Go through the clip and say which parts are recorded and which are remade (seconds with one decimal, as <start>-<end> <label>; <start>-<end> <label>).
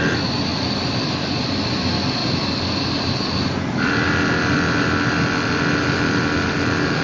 0.0-7.0 recorded